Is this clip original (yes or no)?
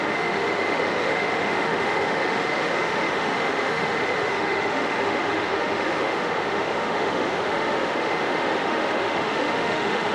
no